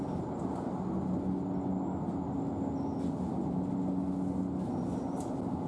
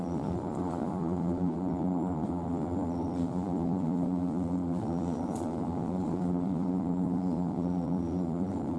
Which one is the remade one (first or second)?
second